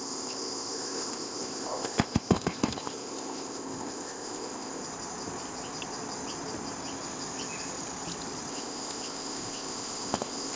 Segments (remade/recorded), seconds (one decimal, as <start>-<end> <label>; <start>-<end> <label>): 0.0-4.8 remade; 4.8-8.5 recorded; 8.5-10.6 remade